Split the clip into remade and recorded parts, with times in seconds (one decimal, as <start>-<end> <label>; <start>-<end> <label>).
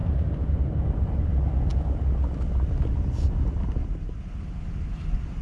0.0-1.2 remade; 1.2-5.4 recorded